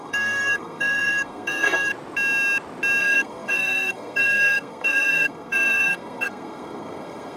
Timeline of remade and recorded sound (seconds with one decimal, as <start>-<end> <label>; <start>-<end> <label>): 0.0-1.9 remade; 1.9-3.0 recorded; 3.0-7.4 remade